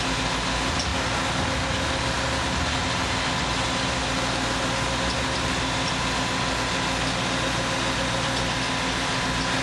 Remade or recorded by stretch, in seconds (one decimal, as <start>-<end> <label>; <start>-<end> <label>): 0.0-9.6 recorded